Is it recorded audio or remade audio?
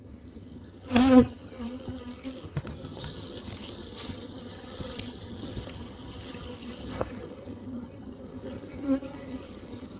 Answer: remade